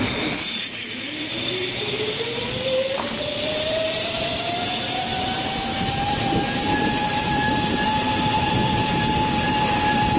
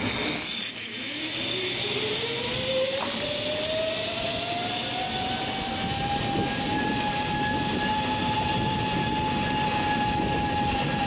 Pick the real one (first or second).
second